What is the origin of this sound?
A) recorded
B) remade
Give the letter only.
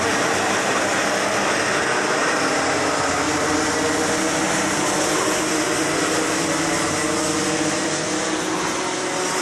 A